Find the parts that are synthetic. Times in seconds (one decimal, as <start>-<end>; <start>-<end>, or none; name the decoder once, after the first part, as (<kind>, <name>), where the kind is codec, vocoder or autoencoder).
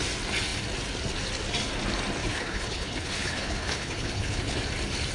2.2-4.6 (codec, HILCodec)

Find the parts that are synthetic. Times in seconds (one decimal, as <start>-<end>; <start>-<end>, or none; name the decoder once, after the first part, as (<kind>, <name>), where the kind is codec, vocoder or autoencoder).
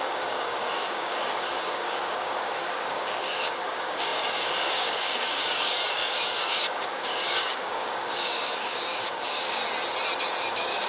0.0-9.6 (codec, DAC); 10.5-10.9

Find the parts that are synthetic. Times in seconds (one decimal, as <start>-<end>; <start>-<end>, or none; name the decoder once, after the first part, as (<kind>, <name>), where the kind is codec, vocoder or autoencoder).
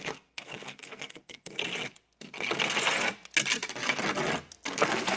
0.0-1.6 (codec, SNAC); 4.7-5.2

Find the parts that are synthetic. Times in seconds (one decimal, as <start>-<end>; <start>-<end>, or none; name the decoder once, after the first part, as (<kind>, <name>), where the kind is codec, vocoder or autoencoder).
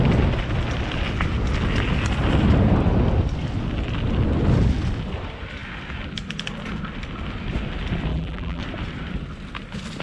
8.1-8.6 (vocoder, BigVGAN v2)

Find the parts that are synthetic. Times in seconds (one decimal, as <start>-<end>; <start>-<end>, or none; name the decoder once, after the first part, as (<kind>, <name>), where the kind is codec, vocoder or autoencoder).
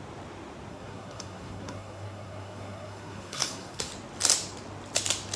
0.7-3.9 (codec, SNAC)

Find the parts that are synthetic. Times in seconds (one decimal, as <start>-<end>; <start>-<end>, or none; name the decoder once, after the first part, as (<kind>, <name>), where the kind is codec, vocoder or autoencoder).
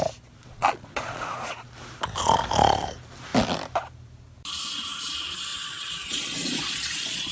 0.4-1.7 (vocoder, Vocos); 5.5-7.3